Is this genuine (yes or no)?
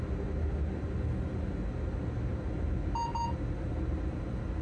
yes